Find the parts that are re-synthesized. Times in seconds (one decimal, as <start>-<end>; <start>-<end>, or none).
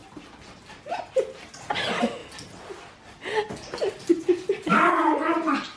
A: none